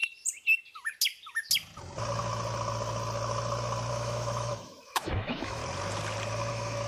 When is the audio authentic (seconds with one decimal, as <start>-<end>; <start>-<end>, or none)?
0.0-3.9; 5.6-6.5